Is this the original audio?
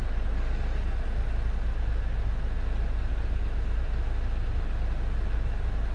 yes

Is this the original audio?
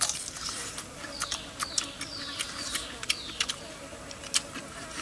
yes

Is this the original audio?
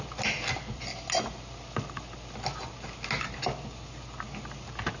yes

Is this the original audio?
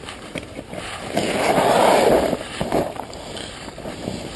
no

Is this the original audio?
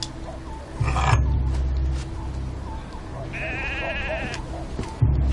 yes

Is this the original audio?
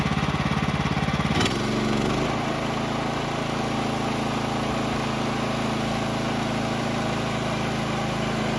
yes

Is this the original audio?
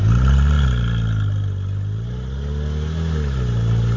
yes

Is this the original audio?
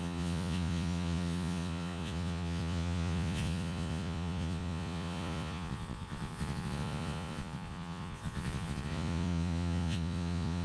no